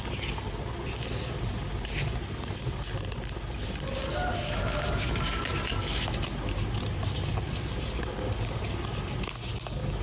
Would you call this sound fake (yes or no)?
no